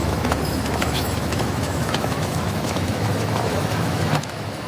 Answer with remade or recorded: remade